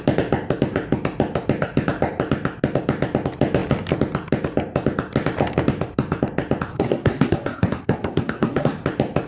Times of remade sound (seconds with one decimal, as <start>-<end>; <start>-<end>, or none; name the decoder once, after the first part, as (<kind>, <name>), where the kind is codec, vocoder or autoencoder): 6.7-8.7 (codec, SNAC)